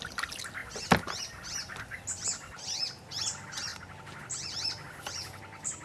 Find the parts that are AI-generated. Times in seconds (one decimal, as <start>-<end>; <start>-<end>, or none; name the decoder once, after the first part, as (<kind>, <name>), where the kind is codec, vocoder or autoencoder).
none

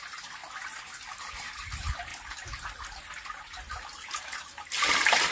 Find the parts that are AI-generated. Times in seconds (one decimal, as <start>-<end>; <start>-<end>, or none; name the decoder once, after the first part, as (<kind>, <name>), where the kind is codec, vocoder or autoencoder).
none

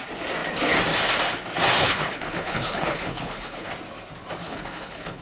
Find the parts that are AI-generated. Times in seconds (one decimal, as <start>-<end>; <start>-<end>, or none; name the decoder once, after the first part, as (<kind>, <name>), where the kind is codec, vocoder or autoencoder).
1.8-3.7 (codec, HILCodec); 4.4-5.2

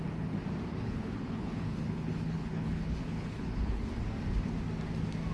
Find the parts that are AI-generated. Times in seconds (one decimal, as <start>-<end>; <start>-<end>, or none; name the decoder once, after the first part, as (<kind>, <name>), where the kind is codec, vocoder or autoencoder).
0.7-3.9 (codec, HILCodec)

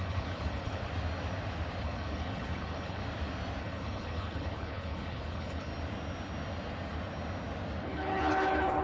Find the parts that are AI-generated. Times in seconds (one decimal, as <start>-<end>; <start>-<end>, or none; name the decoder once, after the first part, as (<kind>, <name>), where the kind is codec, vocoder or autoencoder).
0.0-0.8 (codec, HILCodec); 1.8-3.0; 3.6-5.7; 7.8-8.8